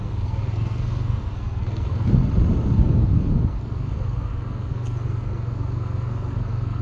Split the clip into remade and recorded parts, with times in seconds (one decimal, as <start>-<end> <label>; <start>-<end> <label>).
0.0-2.2 remade; 2.2-2.8 recorded; 2.8-6.8 remade